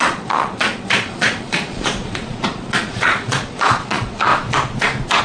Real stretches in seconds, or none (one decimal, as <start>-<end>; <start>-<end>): 4.3-5.2

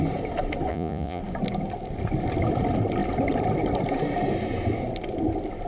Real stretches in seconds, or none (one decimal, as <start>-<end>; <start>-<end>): 0.0-0.7; 1.2-5.7

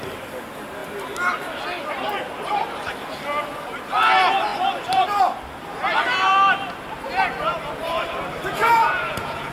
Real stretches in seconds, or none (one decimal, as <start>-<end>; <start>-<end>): 0.0-8.6

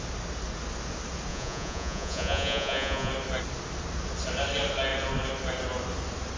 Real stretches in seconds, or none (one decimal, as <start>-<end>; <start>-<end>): 0.0-1.3; 3.1-6.4

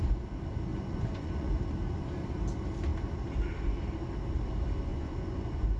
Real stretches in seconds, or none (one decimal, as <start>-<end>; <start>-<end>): 0.0-0.7; 1.5-4.9

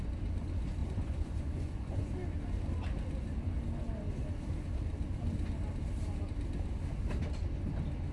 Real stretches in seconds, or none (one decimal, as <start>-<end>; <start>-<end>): 0.0-0.8; 2.1-8.1